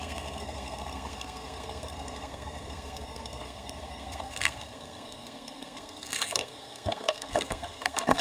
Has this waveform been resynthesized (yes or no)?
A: yes